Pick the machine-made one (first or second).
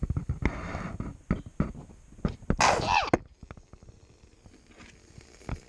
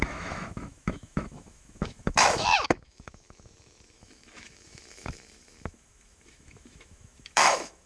second